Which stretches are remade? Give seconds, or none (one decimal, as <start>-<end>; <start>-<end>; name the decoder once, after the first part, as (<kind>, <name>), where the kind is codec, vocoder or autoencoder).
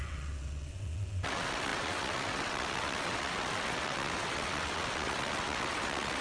0.0-6.2 (vocoder, WaveNeXt)